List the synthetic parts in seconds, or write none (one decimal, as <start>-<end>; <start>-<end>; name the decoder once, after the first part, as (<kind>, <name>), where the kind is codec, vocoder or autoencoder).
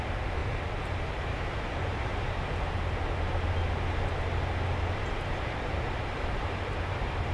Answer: 0.0-2.1 (vocoder, BigVGAN v2); 4.9-7.3